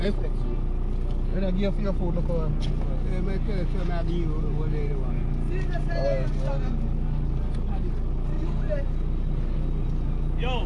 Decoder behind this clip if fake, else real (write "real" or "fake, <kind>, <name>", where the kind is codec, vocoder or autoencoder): real